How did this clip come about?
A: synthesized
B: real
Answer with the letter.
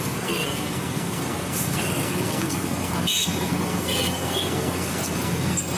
A